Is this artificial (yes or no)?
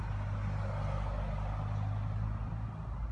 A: no